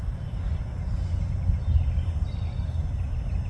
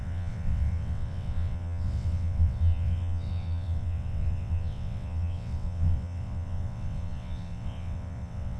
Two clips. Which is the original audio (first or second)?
first